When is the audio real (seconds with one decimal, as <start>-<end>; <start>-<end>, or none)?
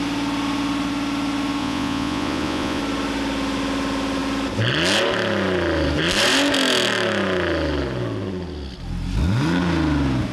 0.0-1.6; 2.8-10.3